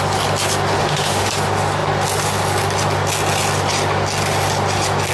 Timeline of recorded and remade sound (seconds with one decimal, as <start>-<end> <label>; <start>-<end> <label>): 0.0-0.8 recorded; 0.8-1.3 remade; 1.3-5.1 recorded